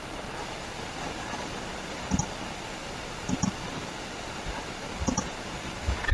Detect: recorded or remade remade